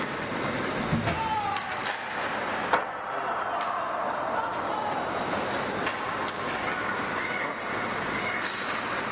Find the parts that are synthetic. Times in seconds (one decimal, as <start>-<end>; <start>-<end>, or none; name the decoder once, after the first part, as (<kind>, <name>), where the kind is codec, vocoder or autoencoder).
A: none